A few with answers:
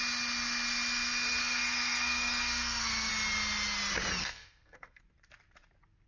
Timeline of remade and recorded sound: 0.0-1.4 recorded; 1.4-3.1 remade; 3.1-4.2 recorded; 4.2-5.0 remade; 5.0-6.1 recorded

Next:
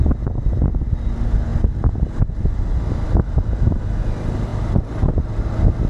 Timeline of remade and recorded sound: 0.0-5.9 recorded

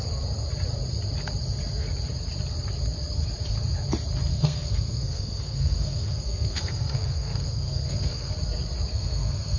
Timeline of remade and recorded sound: 0.0-4.3 recorded; 4.3-8.3 remade; 8.3-8.9 recorded; 8.9-9.6 remade

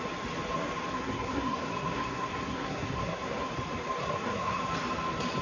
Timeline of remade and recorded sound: 0.0-0.9 recorded; 0.9-3.5 remade; 3.5-4.0 recorded; 4.0-4.6 remade; 4.6-5.4 recorded

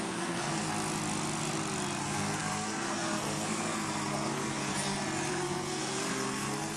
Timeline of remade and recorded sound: 0.0-0.7 remade; 0.7-2.0 recorded; 2.0-4.7 remade; 4.7-5.3 recorded; 5.3-6.8 remade

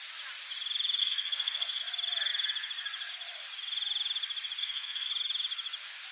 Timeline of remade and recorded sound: 0.0-1.0 recorded; 1.0-1.8 remade; 1.8-4.6 recorded; 4.6-5.1 remade; 5.1-6.1 recorded

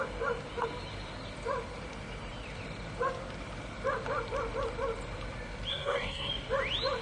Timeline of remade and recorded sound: 0.0-5.7 recorded; 5.7-6.3 remade; 6.3-7.0 recorded